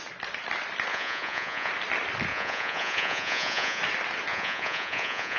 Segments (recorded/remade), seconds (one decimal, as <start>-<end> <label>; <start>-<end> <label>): 0.0-0.9 recorded; 0.9-1.7 remade; 1.7-2.3 recorded; 2.3-3.8 remade; 3.8-4.3 recorded; 4.3-5.4 remade